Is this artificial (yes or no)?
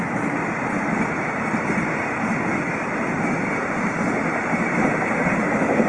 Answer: no